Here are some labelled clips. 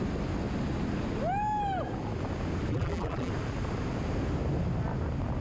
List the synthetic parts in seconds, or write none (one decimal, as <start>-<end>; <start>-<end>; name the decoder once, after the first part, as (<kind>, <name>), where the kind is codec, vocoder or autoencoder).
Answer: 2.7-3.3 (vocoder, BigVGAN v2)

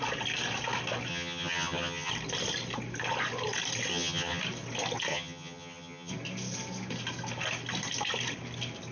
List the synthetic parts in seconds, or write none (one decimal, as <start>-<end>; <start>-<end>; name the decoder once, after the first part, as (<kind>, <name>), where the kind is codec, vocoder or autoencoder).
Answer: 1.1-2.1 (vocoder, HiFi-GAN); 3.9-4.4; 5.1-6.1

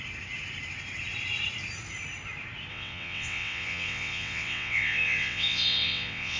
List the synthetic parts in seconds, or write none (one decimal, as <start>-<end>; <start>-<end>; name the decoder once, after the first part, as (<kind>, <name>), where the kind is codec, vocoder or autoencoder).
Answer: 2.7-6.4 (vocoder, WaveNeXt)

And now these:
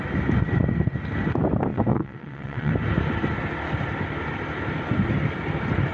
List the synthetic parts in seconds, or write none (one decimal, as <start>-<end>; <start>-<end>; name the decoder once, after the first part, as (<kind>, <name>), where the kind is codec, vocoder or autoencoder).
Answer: 1.7-2.7 (vocoder, WaveNeXt)

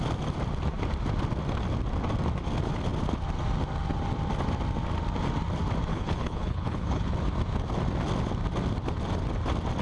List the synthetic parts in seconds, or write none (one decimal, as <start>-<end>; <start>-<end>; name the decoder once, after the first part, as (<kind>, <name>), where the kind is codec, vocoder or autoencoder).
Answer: 5.9-7.1 (codec, HILCodec)